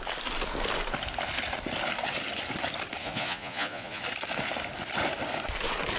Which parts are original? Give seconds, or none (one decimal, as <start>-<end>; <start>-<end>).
0.0-3.0; 4.0-6.0